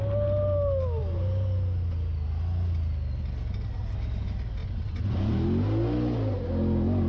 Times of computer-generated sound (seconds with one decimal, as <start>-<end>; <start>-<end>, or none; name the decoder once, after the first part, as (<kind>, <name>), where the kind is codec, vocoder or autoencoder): none